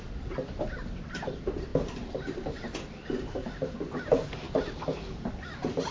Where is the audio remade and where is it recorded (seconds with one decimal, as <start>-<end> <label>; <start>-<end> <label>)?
0.0-5.9 recorded